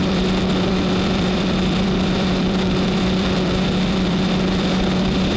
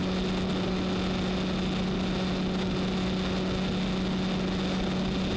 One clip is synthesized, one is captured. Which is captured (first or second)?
second